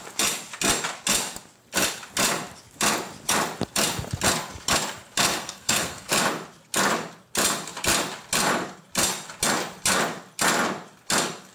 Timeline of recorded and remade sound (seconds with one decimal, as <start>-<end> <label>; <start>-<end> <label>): 0.0-5.3 recorded; 5.3-6.1 remade; 6.1-11.5 recorded